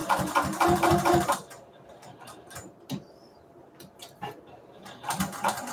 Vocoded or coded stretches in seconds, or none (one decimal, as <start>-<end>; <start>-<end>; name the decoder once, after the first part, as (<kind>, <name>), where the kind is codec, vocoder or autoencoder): 0.0-3.4 (vocoder, BigVGAN v2)